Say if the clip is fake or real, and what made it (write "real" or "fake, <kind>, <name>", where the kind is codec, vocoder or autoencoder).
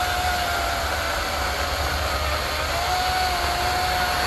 real